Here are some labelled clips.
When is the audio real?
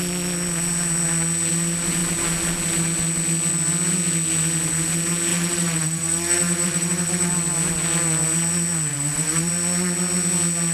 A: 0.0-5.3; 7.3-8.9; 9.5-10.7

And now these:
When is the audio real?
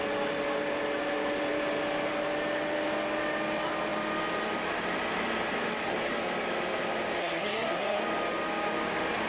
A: 0.0-7.2; 8.0-9.3